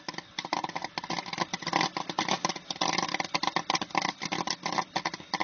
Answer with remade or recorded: recorded